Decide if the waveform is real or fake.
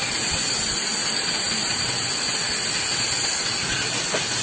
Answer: real